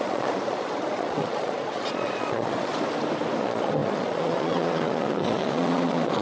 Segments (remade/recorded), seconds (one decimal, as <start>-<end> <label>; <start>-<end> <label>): 0.0-2.7 remade; 2.7-3.4 recorded; 3.4-6.2 remade